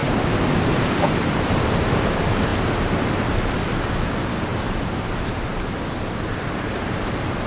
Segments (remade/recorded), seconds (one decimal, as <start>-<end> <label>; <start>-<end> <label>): 0.0-1.2 recorded; 1.2-7.5 remade